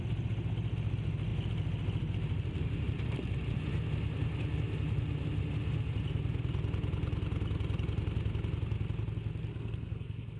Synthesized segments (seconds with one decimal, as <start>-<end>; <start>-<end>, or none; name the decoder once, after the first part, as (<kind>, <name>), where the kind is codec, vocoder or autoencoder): 9.5-10.4 (codec, SNAC)